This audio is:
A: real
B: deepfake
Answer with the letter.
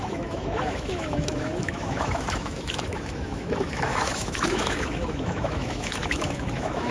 B